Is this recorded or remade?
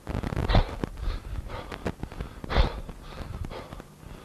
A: recorded